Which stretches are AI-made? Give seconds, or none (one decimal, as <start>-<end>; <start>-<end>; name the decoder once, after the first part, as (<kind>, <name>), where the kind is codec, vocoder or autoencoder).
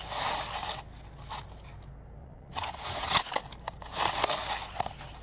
2.2-3.2 (vocoder, Vocos)